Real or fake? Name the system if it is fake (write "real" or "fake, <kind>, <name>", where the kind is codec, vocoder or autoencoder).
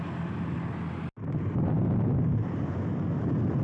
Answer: real